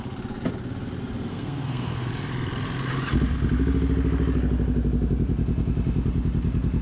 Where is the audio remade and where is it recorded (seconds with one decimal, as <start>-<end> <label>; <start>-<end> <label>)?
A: 0.0-1.3 recorded; 1.3-2.1 remade; 2.1-6.8 recorded